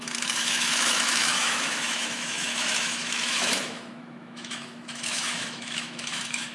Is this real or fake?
fake